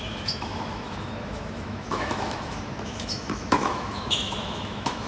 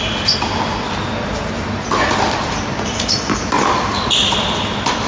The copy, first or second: first